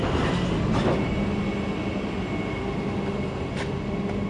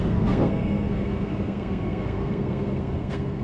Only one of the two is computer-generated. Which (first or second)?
second